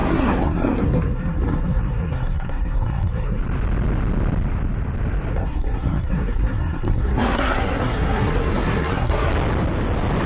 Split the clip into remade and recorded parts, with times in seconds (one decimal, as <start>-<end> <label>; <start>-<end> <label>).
0.0-3.4 remade; 3.4-5.3 recorded; 5.3-9.3 remade; 9.3-10.3 recorded